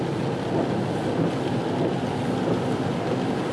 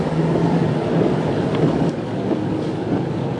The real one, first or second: first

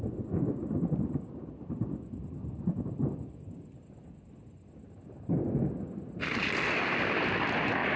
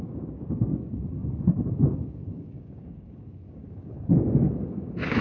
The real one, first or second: first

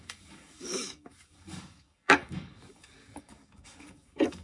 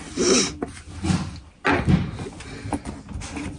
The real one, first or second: second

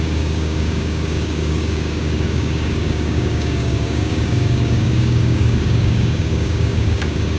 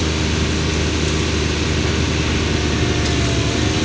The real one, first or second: second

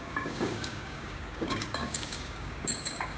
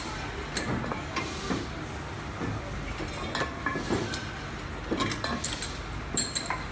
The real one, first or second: second